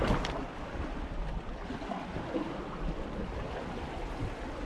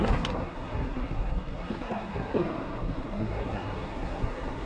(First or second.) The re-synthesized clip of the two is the second